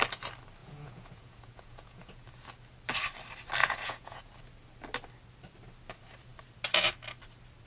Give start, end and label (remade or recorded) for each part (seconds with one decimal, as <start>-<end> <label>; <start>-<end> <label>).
0.0-0.6 recorded; 0.6-2.3 remade; 2.3-3.6 recorded; 3.6-4.4 remade; 4.4-7.7 recorded